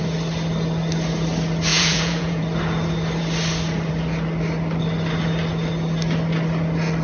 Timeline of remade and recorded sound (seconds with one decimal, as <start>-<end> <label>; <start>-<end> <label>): 0.0-1.7 recorded; 1.7-2.4 remade; 2.4-7.0 recorded